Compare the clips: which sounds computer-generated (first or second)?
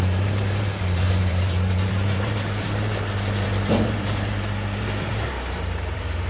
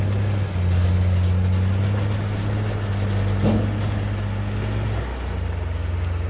first